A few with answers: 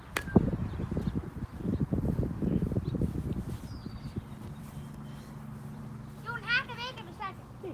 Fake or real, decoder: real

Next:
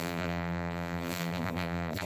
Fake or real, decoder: fake, vocoder, BigVGAN v2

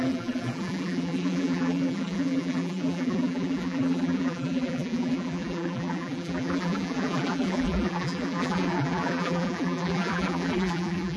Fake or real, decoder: fake, vocoder, BigVGAN v2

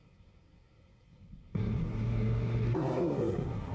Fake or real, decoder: fake, codec, SNAC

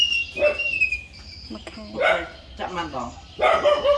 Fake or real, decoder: real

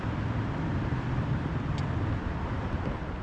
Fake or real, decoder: fake, vocoder, BigVGAN v2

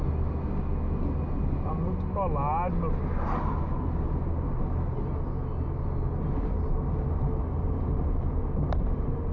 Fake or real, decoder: real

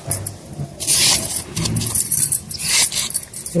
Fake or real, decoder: real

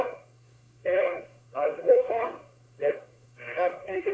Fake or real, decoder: fake, codec, SNAC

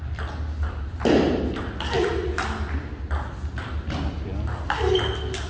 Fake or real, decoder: real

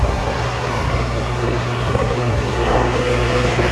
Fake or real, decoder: fake, codec, SNAC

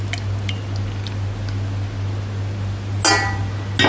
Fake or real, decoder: real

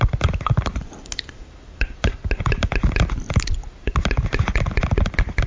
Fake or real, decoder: real